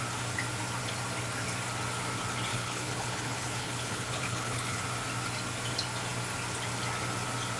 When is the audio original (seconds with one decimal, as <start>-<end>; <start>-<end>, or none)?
0.0-2.5; 4.8-7.6